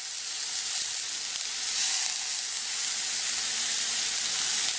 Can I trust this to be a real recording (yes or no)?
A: yes